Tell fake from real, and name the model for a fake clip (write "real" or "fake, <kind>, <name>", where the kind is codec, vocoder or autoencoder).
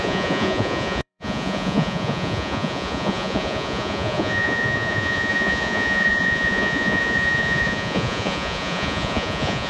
fake, vocoder, Vocos